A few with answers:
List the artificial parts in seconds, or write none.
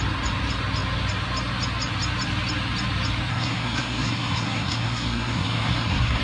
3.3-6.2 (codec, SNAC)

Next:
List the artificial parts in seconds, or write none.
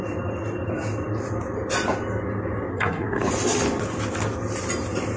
2.7-3.3 (codec, SNAC)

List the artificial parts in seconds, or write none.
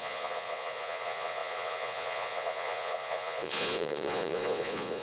0.0-5.0 (vocoder, Vocos)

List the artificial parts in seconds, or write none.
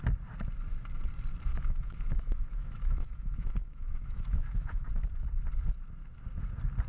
1.5-4.9 (autoencoder, DAC-VAE)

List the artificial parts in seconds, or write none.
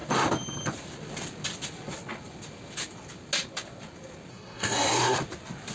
4.3-5.2 (codec, SNAC)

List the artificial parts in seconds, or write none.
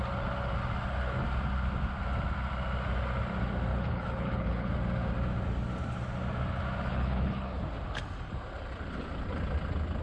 3.7-4.7 (codec, HILCodec); 6.9-7.6